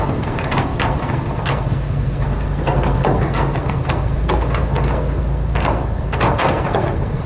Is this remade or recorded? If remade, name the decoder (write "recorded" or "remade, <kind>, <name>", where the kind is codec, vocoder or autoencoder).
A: remade, codec, SNAC